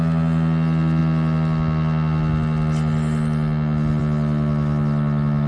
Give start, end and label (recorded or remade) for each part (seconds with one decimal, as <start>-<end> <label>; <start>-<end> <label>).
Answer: 0.0-5.5 recorded